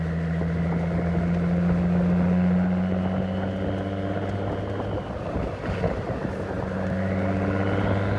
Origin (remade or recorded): recorded